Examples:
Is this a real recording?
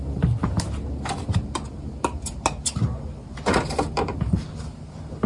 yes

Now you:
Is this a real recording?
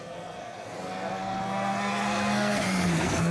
no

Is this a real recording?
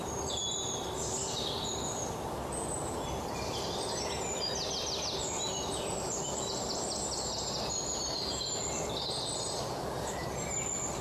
yes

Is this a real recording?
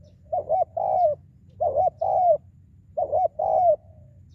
yes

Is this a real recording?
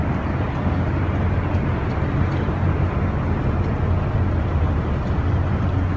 yes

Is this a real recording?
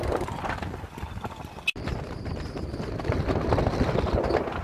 yes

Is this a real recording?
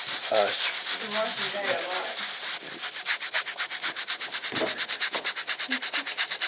yes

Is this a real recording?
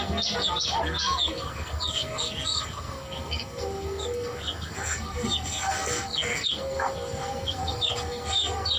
no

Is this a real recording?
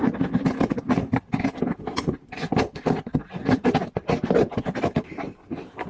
yes